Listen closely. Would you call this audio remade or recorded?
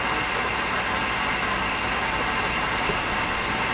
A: recorded